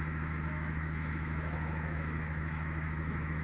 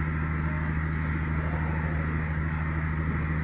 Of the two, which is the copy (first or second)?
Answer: first